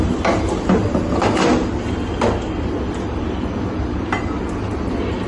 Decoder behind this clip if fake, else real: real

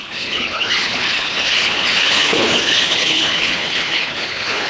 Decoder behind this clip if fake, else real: fake, codec, HILCodec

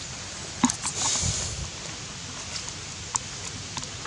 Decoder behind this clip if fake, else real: real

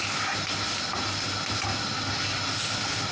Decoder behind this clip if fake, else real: real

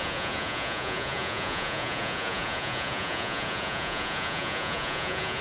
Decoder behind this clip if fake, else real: fake, vocoder, Vocos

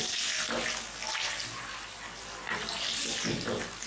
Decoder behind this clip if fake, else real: real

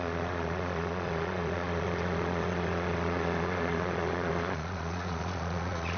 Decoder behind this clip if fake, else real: fake, vocoder, Vocos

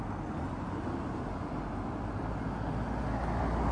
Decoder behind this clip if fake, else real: real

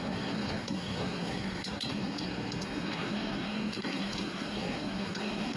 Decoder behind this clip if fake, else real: fake, codec, SNAC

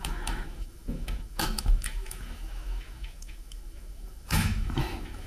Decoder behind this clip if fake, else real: fake, autoencoder, DAC-VAE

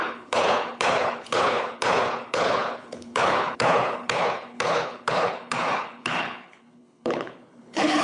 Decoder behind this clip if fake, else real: fake, codec, HILCodec